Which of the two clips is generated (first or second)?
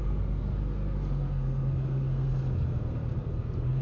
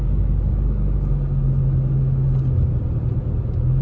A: first